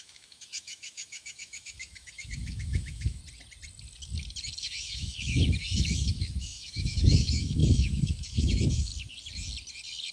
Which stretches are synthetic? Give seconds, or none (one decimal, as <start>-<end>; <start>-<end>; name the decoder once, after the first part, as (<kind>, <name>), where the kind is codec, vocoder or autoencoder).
0.0-3.2 (autoencoder, DAC-VAE); 4.6-8.9